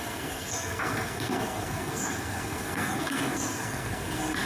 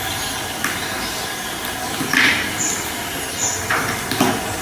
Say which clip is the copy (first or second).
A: first